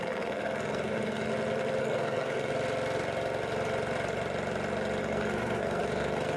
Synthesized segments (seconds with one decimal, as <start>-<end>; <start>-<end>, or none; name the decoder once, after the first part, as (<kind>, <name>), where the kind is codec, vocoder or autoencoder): 0.0-1.3 (codec, SNAC); 1.8-2.5; 5.0-6.4